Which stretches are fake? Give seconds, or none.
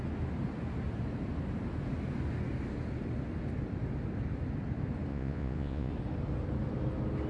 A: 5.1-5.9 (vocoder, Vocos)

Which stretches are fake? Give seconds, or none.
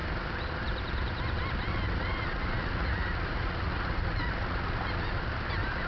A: 1.7-5.2 (vocoder, Vocos)